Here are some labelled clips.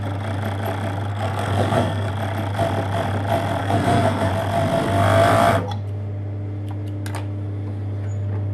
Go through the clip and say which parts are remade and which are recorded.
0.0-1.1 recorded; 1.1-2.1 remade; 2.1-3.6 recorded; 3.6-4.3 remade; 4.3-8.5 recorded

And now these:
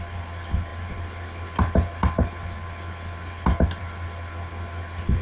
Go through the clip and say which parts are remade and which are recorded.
0.0-5.2 recorded